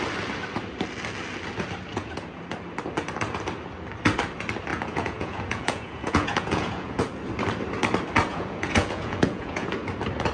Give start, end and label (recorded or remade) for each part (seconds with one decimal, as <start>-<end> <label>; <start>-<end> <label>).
0.0-1.9 recorded; 1.9-2.4 remade; 2.4-4.7 recorded; 4.7-7.0 remade; 7.0-8.3 recorded; 8.3-9.7 remade; 9.7-10.3 recorded